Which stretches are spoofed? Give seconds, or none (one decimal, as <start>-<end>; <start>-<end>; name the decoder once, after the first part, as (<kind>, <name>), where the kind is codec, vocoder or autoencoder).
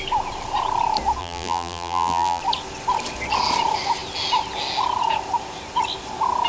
1.2-2.4 (vocoder, BigVGAN v2)